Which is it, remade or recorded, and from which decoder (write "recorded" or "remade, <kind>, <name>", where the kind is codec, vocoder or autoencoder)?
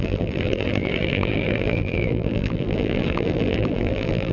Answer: remade, vocoder, BigVGAN v2